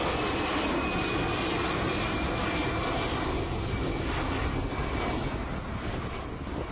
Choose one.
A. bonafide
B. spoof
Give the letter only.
A